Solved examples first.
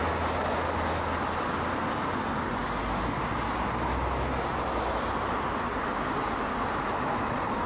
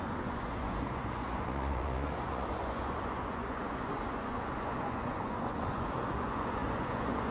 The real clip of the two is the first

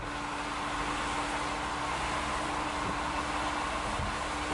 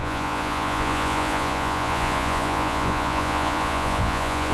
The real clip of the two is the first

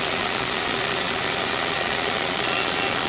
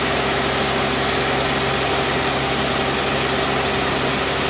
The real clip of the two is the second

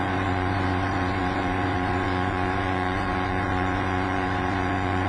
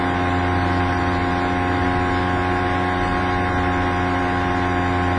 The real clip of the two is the second